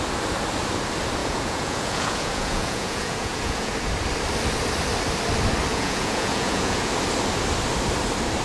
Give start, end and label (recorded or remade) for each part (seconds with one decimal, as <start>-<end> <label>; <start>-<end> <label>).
0.0-1.2 recorded; 1.2-3.7 remade; 3.7-5.7 recorded; 5.7-6.9 remade; 6.9-8.4 recorded